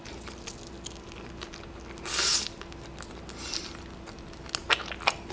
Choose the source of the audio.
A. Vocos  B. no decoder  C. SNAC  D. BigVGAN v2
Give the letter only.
B